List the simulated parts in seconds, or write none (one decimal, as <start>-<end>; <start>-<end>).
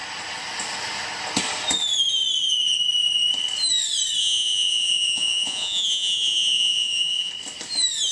4.2-7.3